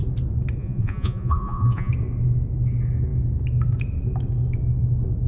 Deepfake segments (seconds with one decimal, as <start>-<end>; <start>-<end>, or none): 0.6-1.9